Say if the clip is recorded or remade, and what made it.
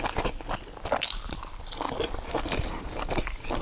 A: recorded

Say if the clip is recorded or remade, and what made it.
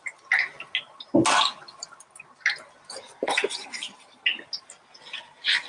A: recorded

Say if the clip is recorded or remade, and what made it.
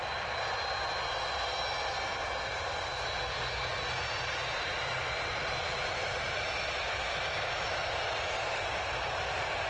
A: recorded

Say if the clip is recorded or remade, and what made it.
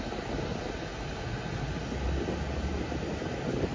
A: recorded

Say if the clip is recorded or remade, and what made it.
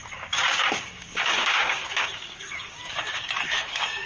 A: remade, codec, DAC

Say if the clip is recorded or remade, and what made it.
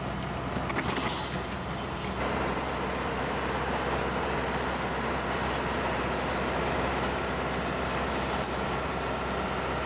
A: recorded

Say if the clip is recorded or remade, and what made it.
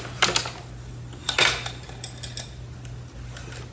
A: recorded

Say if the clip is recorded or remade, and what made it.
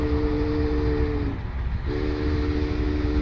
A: recorded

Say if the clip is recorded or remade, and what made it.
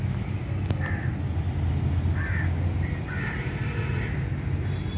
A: recorded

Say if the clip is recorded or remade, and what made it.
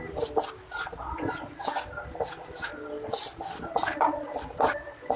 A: recorded